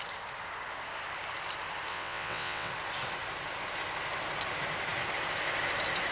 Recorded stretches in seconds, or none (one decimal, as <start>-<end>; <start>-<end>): 0.0-1.9; 2.7-6.1